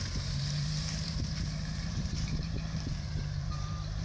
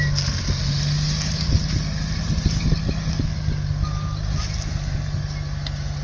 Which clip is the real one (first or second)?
second